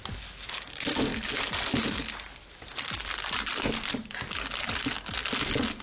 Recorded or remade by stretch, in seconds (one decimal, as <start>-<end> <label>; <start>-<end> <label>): 0.0-5.8 recorded